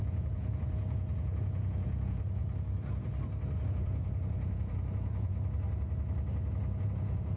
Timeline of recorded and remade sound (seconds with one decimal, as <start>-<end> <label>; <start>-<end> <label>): 0.0-2.4 remade; 2.4-3.6 recorded; 3.6-5.3 remade; 5.3-6.8 recorded; 6.8-7.4 remade